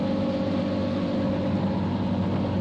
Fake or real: real